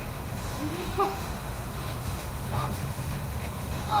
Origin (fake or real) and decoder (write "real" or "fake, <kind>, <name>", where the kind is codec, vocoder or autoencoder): fake, autoencoder, DAC-VAE